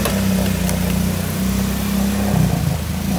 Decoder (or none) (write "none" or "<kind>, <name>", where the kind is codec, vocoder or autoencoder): none